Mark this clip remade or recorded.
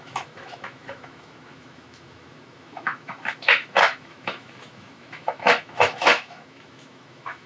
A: remade